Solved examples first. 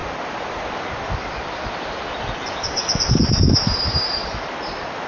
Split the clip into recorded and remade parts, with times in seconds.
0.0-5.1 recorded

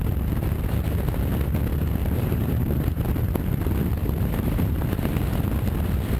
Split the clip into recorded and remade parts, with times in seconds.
0.0-2.0 recorded; 2.0-3.1 remade; 3.1-4.0 recorded; 4.0-5.1 remade; 5.1-6.2 recorded

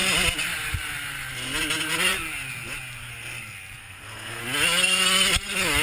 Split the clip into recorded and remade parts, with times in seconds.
0.0-3.8 recorded; 3.8-4.4 remade; 4.4-5.8 recorded